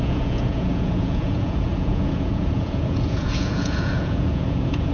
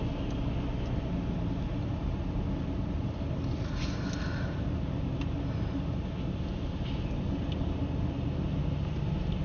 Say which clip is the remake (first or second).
first